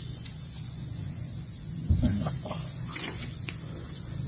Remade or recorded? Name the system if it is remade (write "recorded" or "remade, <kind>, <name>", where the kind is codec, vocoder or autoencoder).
remade, vocoder, Vocos